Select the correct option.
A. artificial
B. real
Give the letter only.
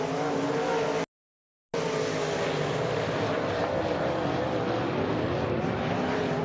B